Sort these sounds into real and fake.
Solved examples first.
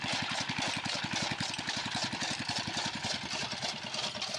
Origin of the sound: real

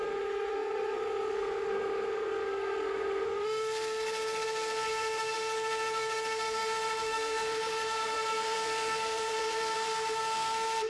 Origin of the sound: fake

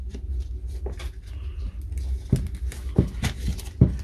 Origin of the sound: real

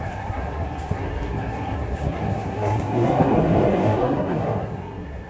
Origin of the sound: fake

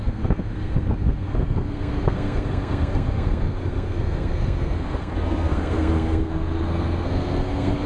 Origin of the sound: fake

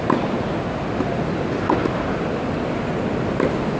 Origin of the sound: real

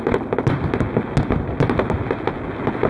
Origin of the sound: real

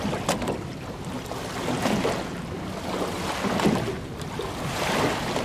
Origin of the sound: real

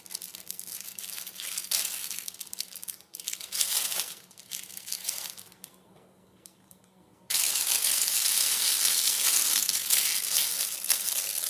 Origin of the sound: fake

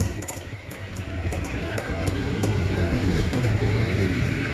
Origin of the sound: fake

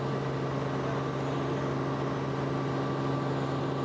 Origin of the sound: real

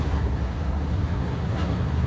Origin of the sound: fake